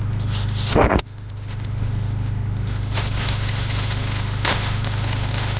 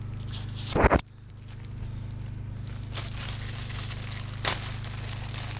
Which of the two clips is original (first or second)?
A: second